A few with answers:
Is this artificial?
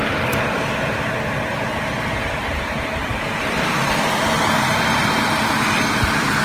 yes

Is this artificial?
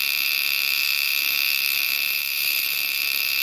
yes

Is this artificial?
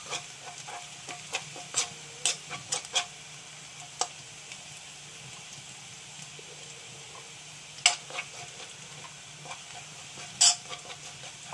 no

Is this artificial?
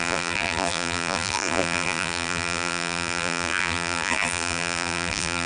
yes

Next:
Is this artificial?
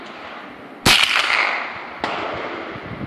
no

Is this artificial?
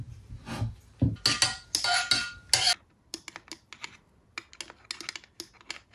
no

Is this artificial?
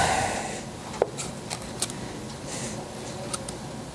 no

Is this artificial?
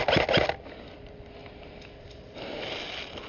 no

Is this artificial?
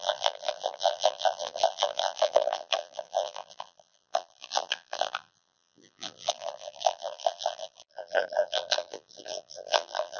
yes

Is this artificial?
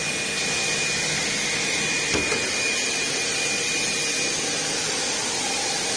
no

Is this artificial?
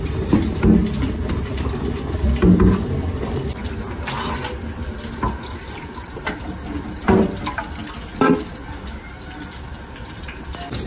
no